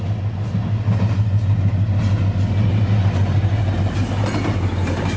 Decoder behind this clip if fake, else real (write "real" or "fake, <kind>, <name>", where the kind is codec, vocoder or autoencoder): real